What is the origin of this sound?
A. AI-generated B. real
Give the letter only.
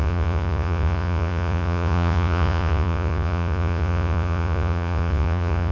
A